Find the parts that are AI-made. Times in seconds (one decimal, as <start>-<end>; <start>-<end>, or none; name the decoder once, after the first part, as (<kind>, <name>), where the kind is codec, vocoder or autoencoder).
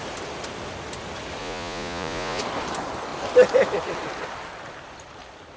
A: 1.4-2.4 (vocoder, Vocos)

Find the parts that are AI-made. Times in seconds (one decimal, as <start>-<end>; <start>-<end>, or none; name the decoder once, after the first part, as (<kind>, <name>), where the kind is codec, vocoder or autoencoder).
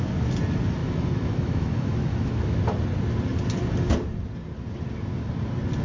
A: 0.8-2.6 (autoencoder, DAC-VAE)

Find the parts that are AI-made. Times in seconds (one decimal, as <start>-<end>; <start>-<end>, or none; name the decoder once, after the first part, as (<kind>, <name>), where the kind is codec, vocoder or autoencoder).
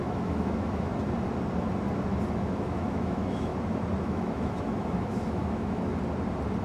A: 0.0-0.9 (autoencoder, DAC-VAE); 2.3-3.5; 4.0-5.9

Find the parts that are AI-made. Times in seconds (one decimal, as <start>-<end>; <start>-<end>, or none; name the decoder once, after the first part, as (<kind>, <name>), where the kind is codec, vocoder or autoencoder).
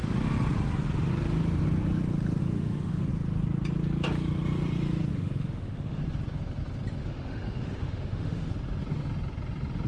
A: 2.4-3.1 (autoencoder, DAC-VAE); 5.1-6.0; 7.0-8.5